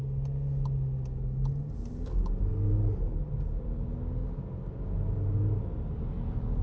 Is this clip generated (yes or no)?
no